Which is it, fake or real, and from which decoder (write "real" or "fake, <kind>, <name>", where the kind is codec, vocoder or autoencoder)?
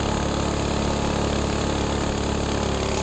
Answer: real